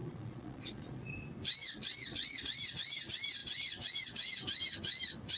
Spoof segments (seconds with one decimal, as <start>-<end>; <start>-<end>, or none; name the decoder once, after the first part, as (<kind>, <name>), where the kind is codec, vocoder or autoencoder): 0.0-1.1 (vocoder, Vocos); 1.6-2.6